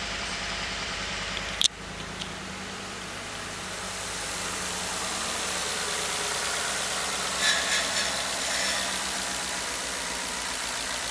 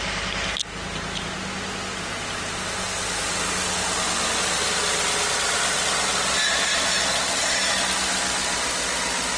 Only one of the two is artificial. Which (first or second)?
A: first